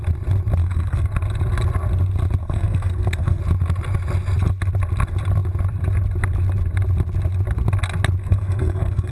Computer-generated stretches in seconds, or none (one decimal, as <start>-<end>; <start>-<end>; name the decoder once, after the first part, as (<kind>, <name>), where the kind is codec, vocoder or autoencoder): 0.6-1.1 (codec, SNAC); 2.4-3.4; 8.2-9.1